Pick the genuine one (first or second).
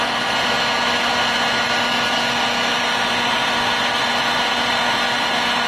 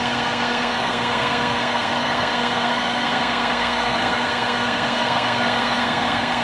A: first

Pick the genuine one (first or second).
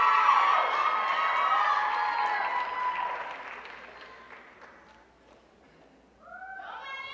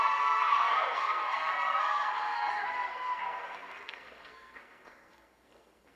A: first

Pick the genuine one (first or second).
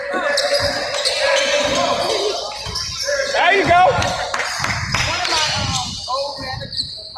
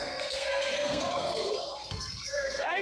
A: first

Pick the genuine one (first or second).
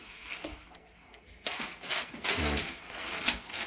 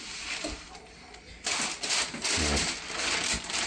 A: second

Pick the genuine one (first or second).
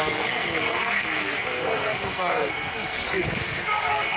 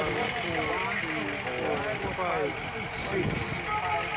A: second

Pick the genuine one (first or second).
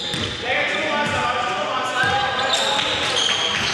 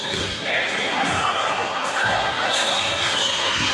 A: first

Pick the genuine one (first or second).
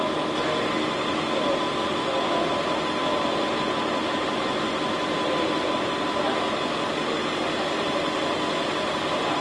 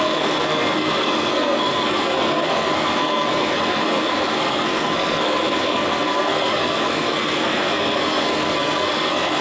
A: first